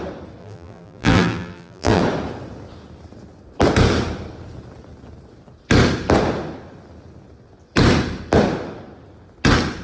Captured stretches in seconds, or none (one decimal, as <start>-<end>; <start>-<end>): 0.0-0.4; 2.0-9.8